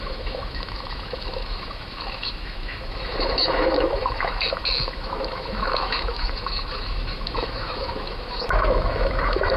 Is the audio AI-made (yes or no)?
yes